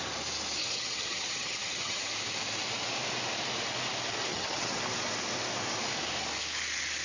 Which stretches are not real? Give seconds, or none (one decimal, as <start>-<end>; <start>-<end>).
0.6-2.1; 4.3-4.8